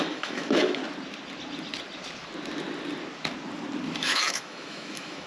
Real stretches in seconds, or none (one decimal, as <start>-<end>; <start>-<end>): 0.8-4.0